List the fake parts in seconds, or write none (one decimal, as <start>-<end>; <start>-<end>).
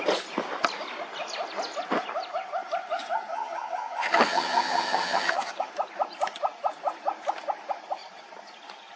3.3-5.7